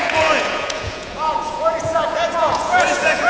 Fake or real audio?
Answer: fake